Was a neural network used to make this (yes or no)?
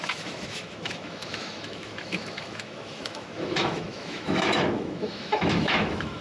yes